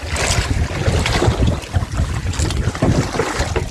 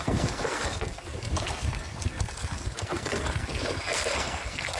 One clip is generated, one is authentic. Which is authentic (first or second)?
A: first